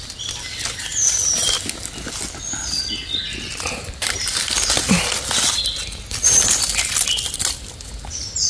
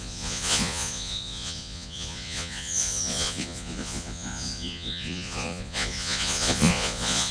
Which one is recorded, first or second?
first